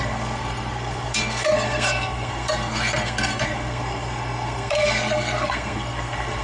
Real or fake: fake